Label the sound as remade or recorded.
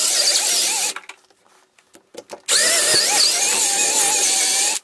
recorded